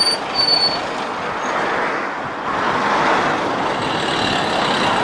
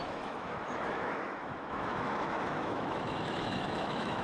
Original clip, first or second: first